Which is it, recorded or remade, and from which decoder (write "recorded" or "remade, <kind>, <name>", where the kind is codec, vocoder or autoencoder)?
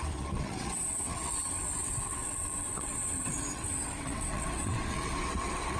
remade, vocoder, WaveNeXt